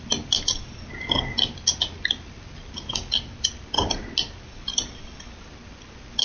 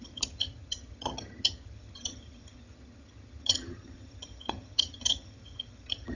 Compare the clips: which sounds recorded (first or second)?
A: first